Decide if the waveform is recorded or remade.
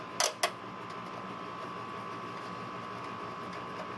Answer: recorded